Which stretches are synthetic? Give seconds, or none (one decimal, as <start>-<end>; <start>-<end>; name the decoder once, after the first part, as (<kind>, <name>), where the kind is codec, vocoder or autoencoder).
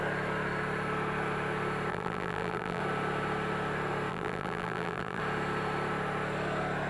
1.9-2.8 (vocoder, BigVGAN v2); 4.1-5.2